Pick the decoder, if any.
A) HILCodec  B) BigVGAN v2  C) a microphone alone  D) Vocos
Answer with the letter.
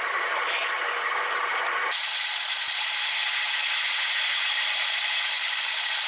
B